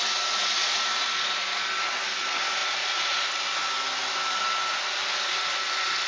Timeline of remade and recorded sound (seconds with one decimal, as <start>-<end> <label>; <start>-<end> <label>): 0.0-6.1 recorded